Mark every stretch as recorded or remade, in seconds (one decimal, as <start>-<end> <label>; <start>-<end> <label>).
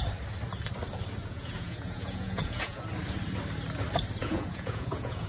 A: 0.0-1.2 recorded; 1.2-2.8 remade; 2.8-4.2 recorded; 4.2-5.3 remade